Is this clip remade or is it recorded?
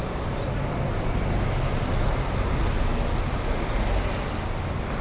recorded